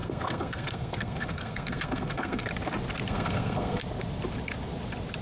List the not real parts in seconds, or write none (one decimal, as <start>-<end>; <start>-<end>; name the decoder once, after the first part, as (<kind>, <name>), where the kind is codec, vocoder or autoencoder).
0.0-2.5 (codec, SNAC); 3.1-3.8